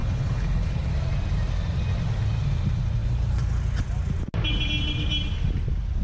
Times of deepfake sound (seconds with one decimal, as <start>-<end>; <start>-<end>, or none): 0.0-0.9